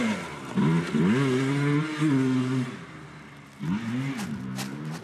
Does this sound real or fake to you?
real